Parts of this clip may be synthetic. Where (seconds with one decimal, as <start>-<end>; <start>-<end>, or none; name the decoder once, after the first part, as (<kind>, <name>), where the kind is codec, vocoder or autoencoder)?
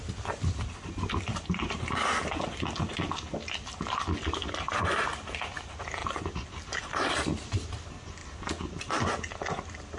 none